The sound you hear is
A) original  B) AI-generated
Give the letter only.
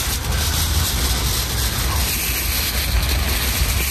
A